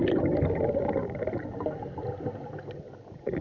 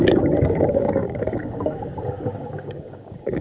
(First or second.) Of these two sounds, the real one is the first